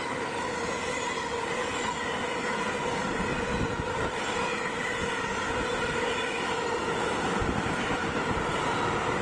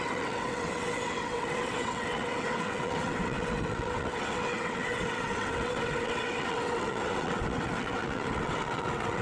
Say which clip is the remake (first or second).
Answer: second